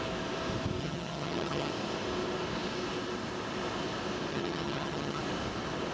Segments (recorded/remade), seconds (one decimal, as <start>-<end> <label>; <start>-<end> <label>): 0.0-0.8 recorded; 0.8-1.7 remade; 1.7-4.3 recorded; 4.3-5.2 remade; 5.2-5.9 recorded